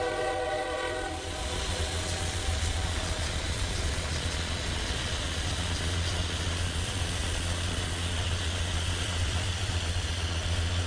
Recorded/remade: remade